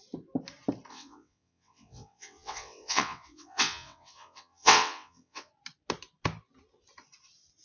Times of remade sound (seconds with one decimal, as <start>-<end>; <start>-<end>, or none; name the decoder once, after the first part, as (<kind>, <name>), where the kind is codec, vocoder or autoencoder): 0.9-5.5 (vocoder, WaveNeXt)